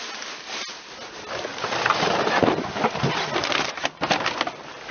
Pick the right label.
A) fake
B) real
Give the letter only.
B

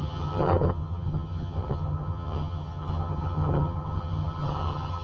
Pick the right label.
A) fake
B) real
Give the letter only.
A